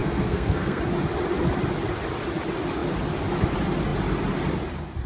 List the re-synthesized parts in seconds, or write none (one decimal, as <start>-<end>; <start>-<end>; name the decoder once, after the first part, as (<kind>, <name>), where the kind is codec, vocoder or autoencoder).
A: 0.0-0.8 (codec, SNAC)

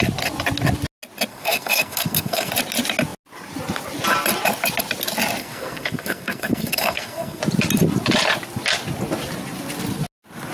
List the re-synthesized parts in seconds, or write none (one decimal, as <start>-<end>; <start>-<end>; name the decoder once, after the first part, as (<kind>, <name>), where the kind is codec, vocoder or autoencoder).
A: 1.3-2.5 (codec, SNAC); 5.4-7.4

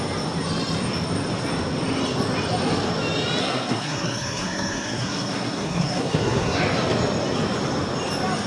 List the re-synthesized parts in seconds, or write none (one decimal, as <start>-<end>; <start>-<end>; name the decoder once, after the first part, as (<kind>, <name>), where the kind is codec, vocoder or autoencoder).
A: 3.4-6.6 (codec, SNAC)